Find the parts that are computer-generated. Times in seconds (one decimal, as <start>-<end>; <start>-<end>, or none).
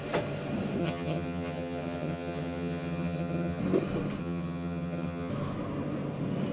0.8-3.6; 4.2-5.3